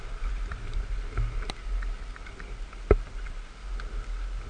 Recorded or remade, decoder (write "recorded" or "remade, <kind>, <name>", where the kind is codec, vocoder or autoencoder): recorded